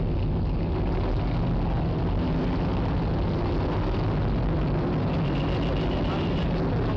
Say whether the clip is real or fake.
real